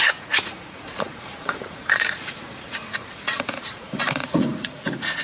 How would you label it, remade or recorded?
remade